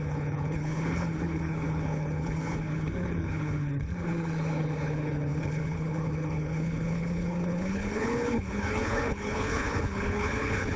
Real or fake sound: fake